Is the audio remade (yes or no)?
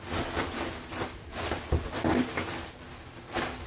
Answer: no